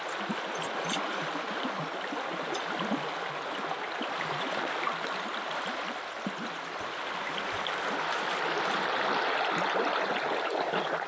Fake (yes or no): no